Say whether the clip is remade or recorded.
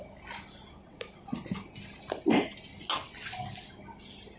recorded